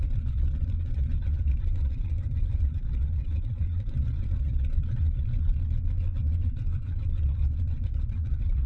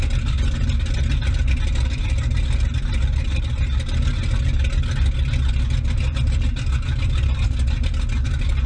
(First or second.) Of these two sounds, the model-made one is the first